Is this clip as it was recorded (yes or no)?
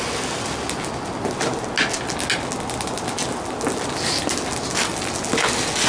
yes